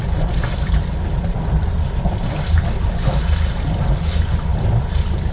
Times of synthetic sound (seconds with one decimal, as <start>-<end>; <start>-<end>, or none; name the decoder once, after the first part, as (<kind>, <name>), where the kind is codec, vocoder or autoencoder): 0.0-3.2 (vocoder, BigVGAN v2); 4.5-5.3